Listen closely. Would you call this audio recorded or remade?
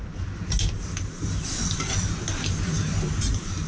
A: recorded